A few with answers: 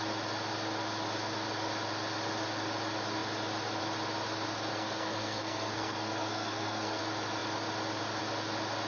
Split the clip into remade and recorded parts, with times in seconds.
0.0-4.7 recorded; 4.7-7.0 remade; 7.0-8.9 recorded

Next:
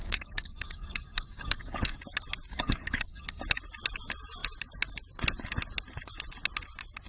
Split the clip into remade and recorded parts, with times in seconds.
0.0-2.0 remade; 2.0-2.5 recorded; 2.5-3.4 remade; 3.4-7.1 recorded

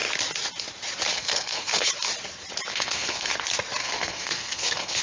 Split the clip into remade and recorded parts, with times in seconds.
0.0-1.1 recorded; 1.1-1.9 remade; 1.9-2.7 recorded; 2.7-3.3 remade; 3.3-3.8 recorded; 3.8-5.0 remade

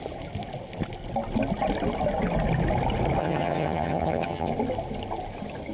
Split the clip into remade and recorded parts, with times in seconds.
0.0-3.2 recorded; 3.2-4.5 remade; 4.5-5.7 recorded

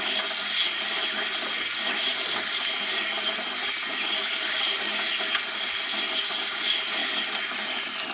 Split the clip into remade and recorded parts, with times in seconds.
0.0-1.8 recorded; 1.8-3.7 remade; 3.7-8.1 recorded

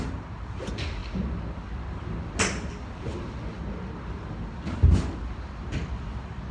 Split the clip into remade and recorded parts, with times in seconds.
0.0-6.5 recorded

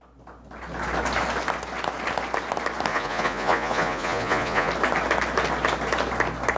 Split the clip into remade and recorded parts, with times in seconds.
0.0-2.9 recorded; 2.9-4.7 remade; 4.7-6.6 recorded

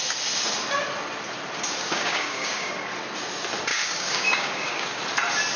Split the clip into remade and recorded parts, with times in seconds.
0.0-1.8 recorded; 1.8-2.7 remade; 2.7-3.7 recorded; 3.7-5.0 remade; 5.0-5.6 recorded